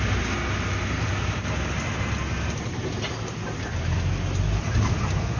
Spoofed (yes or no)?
no